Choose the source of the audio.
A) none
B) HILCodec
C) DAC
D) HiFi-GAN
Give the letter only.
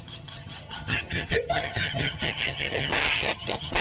D